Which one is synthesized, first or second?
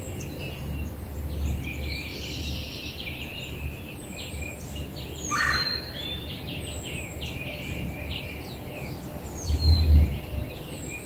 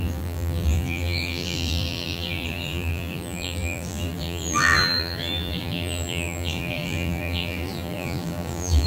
second